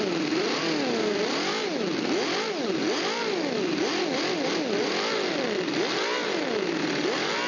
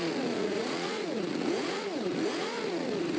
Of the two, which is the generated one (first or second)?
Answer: second